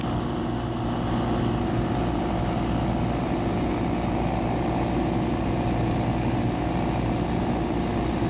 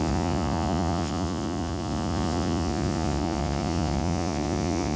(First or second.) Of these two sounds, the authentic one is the first